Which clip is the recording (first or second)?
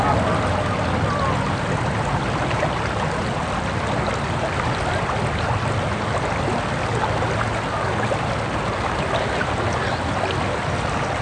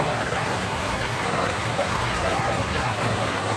first